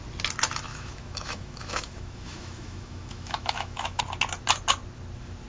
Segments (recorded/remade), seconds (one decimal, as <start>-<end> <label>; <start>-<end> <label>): 0.0-0.7 recorded; 0.7-4.0 remade; 4.0-5.5 recorded